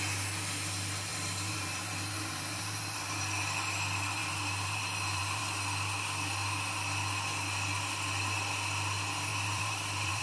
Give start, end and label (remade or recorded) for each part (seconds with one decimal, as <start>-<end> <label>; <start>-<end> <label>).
0.0-1.1 recorded; 1.1-3.2 remade; 3.2-4.2 recorded; 4.2-5.4 remade; 5.4-9.3 recorded; 9.3-10.2 remade